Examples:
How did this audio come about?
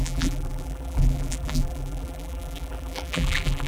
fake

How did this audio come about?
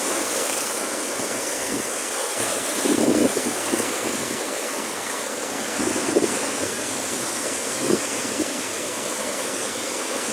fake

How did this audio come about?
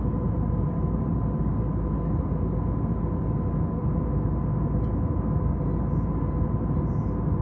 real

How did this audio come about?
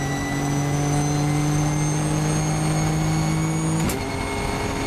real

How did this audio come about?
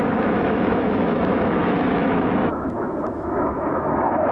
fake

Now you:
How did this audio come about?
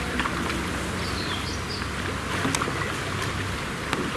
real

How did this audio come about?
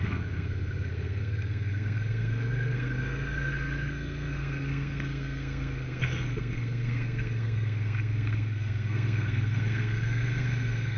fake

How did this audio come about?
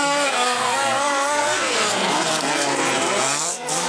fake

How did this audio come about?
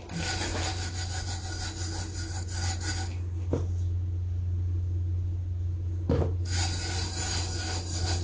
real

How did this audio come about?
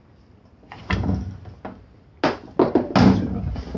real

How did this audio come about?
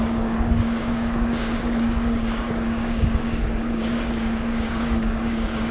fake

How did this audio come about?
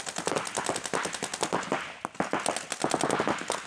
real